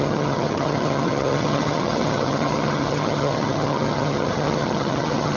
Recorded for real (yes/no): no